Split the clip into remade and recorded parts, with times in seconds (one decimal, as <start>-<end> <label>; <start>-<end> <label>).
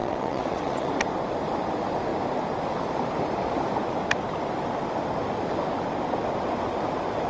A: 0.0-0.9 remade; 0.9-7.3 recorded